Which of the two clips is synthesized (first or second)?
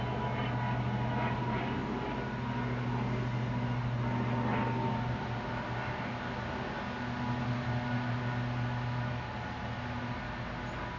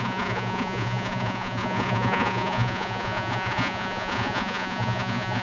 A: second